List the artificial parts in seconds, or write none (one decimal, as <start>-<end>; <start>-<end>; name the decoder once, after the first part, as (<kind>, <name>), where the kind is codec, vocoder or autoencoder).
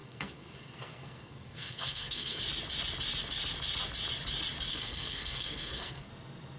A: 0.0-2.4 (codec, SNAC); 4.7-6.1